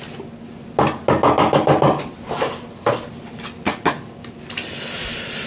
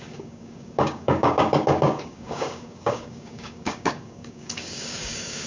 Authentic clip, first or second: first